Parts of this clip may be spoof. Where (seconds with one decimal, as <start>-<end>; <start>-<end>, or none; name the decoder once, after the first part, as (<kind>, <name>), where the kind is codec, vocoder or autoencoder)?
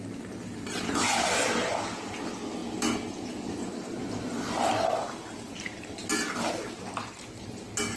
none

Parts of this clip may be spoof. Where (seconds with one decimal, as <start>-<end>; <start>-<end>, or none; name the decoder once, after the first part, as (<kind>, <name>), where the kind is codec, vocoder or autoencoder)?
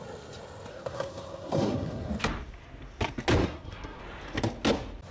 0.7-2.1 (codec, SNAC); 3.4-4.0